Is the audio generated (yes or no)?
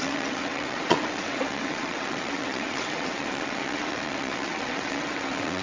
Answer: yes